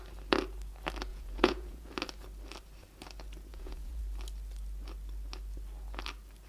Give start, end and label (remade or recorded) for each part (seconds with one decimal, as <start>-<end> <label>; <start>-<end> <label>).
0.0-1.1 recorded; 1.1-1.9 remade; 1.9-3.5 recorded; 3.5-4.0 remade; 4.0-6.5 recorded